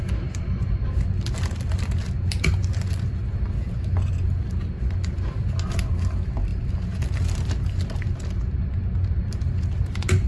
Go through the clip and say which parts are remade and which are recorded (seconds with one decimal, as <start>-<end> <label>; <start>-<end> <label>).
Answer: 0.0-6.5 recorded; 6.5-7.5 remade; 7.5-10.3 recorded

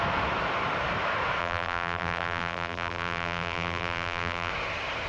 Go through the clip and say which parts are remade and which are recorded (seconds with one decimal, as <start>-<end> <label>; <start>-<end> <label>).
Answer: 0.0-1.4 recorded; 1.4-4.5 remade; 4.5-5.1 recorded

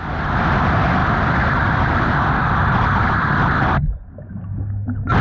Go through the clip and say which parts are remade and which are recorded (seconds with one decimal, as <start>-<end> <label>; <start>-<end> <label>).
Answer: 0.0-1.0 recorded; 1.0-4.1 remade; 4.1-5.2 recorded

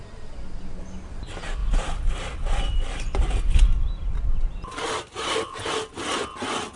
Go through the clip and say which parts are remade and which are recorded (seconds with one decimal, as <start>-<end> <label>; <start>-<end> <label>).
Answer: 0.0-1.6 recorded; 1.6-5.7 remade; 5.7-6.8 recorded

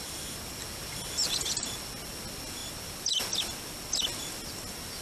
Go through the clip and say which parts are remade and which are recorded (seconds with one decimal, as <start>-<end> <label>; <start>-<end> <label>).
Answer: 0.0-5.0 recorded